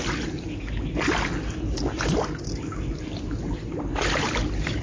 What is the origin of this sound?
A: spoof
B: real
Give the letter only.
B